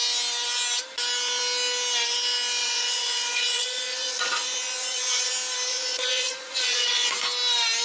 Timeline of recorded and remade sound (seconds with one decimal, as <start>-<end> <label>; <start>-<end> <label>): 0.0-2.6 recorded; 2.6-5.3 remade; 5.3-5.7 recorded; 5.7-7.1 remade; 7.1-7.8 recorded